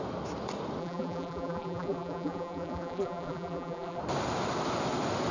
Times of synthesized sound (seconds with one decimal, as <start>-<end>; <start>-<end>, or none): 0.8-4.0